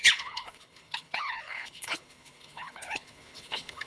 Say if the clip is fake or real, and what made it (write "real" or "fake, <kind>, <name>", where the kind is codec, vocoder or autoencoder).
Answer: fake, codec, HILCodec